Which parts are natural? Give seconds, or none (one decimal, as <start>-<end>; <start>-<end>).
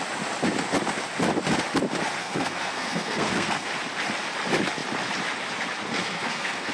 0.0-2.2; 3.7-5.9